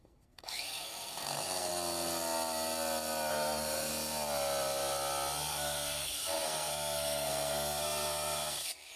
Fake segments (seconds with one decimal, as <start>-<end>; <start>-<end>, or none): 0.0-1.7; 3.3-3.9; 5.5-9.0